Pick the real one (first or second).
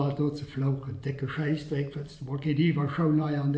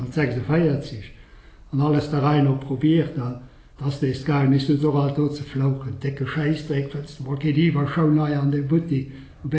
second